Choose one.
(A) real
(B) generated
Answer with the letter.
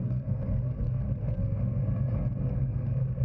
B